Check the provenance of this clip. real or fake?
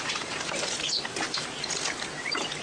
real